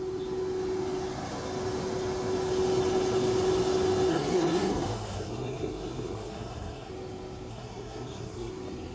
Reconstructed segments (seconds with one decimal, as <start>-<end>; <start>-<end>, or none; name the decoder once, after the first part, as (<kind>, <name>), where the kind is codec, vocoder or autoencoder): 4.1-6.9 (codec, SNAC); 7.5-8.5